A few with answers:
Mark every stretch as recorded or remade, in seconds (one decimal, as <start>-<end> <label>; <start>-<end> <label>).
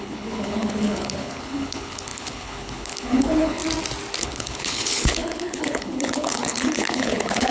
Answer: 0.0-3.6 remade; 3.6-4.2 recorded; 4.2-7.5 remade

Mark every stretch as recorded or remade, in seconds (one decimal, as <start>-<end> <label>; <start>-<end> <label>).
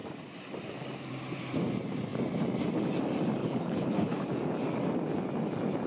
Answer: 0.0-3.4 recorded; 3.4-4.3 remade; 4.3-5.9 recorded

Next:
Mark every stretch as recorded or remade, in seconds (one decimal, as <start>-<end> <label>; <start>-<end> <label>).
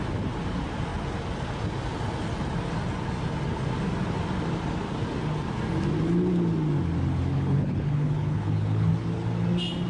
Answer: 0.0-7.3 recorded; 7.3-8.9 remade; 8.9-9.9 recorded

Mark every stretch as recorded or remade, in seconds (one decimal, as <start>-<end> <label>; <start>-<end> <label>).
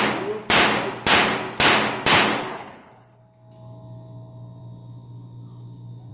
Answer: 0.0-2.4 recorded; 2.4-3.2 remade; 3.2-6.1 recorded